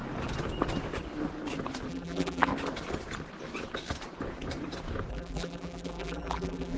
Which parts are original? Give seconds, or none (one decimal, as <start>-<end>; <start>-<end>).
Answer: 0.0-1.9; 2.5-5.1